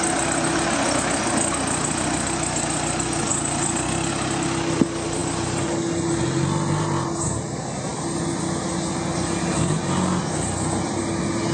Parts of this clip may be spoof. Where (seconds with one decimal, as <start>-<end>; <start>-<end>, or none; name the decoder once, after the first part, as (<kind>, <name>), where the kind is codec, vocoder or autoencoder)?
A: none